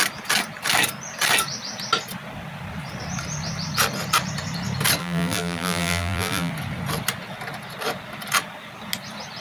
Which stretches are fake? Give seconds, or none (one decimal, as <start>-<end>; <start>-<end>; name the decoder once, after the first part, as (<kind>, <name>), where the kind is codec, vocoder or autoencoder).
5.0-6.5 (vocoder, BigVGAN v2)